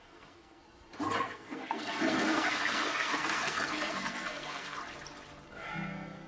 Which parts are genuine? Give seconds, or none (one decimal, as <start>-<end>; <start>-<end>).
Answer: 0.6-1.2; 4.8-5.5